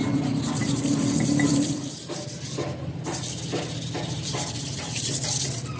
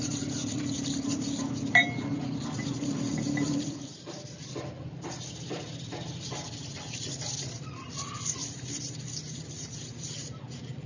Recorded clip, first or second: first